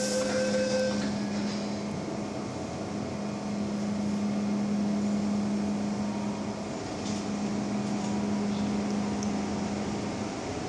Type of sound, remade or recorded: recorded